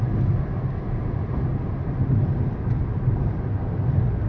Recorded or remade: recorded